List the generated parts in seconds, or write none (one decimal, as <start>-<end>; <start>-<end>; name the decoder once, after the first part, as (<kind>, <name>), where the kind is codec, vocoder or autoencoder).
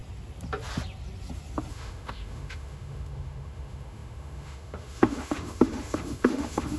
1.7-6.8 (autoencoder, DAC-VAE)